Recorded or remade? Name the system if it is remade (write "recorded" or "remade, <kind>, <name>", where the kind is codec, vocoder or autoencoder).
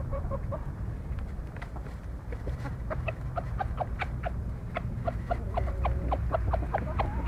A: remade, vocoder, BigVGAN v2